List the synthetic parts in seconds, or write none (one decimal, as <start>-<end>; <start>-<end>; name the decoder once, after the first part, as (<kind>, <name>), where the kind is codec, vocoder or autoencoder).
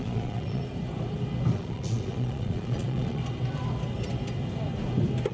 0.0-0.6 (vocoder, Vocos); 1.5-3.2